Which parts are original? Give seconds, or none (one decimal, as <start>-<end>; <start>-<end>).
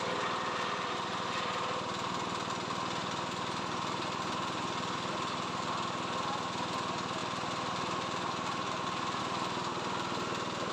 0.0-10.7